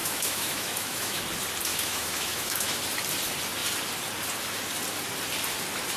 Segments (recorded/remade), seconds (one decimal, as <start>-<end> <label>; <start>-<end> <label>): 0.0-1.2 remade; 1.2-1.7 recorded; 1.7-2.8 remade; 2.8-6.0 recorded